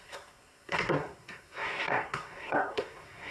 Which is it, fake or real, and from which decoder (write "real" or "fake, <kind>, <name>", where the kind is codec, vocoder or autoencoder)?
fake, codec, SNAC